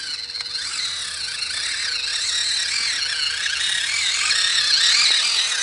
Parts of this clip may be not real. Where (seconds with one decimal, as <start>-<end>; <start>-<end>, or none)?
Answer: none